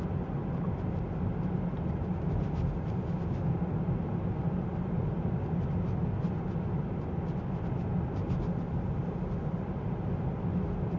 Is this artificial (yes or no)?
no